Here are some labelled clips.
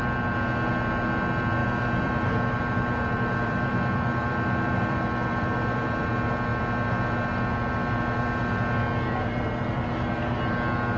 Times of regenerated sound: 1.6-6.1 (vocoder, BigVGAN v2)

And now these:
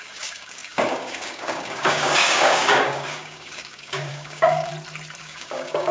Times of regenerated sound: 0.0-4.7 (codec, DAC); 5.2-5.9

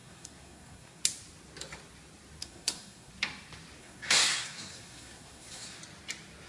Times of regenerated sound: 0.0-1.0 (codec, SNAC); 2.4-3.1; 3.8-5.8

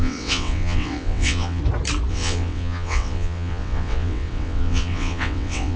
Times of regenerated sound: 0.0-1.6 (vocoder, WaveNeXt); 2.1-5.8

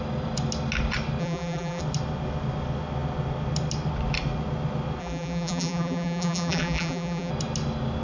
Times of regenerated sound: 1.2-1.8 (vocoder, BigVGAN v2); 5.0-7.3

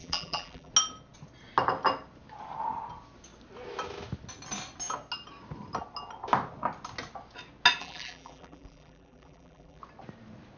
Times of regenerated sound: 0.0-0.7 (vocoder, BigVGAN v2); 7.8-9.8